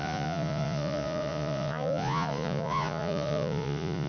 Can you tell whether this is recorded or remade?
remade